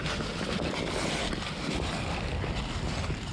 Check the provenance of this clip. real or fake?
real